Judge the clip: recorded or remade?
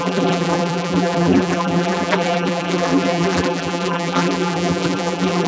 remade